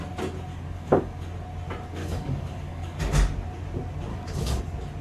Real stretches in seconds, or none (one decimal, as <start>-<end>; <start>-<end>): 0.0-0.5; 1.2-2.0; 3.0-4.1; 4.6-5.0